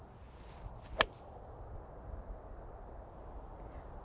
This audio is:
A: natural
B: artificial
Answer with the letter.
A